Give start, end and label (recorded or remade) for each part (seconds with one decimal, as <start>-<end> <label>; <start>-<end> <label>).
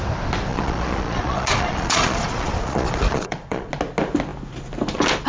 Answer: 0.0-0.5 recorded; 0.5-3.7 remade; 3.7-5.3 recorded